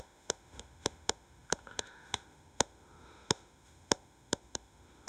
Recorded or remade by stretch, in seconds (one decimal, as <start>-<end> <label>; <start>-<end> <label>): 0.0-5.1 remade